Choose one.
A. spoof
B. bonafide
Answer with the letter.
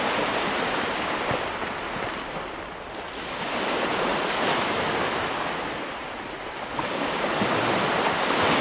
B